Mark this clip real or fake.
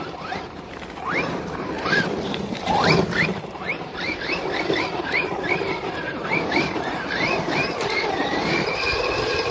fake